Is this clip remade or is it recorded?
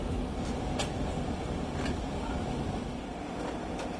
recorded